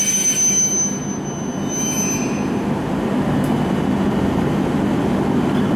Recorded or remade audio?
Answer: recorded